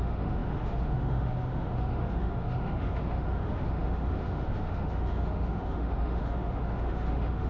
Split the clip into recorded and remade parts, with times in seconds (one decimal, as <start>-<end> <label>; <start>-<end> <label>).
0.0-7.5 remade